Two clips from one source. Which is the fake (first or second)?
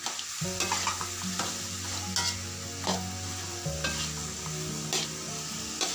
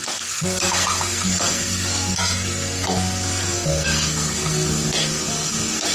second